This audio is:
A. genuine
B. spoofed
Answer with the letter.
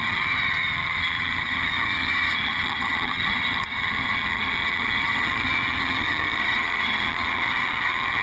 B